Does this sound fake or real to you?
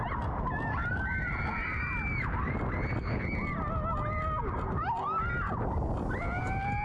real